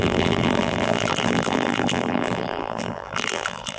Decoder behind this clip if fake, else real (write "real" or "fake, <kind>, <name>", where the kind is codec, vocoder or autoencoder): fake, vocoder, BigVGAN v2